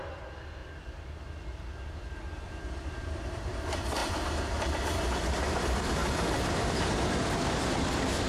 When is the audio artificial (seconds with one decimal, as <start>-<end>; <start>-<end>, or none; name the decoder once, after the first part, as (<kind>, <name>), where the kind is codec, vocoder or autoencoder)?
0.0-0.6 (vocoder, BigVGAN v2); 2.0-6.0; 6.5-8.3